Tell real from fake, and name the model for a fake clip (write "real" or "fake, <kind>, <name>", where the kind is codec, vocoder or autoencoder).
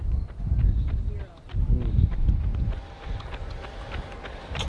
real